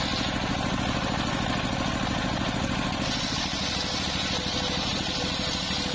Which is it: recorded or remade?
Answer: recorded